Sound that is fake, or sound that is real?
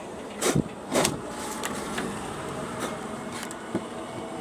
fake